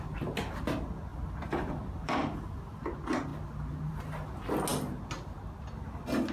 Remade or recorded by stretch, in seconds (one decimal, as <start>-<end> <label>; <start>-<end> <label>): 0.0-1.1 recorded; 1.1-2.8 remade; 2.8-6.3 recorded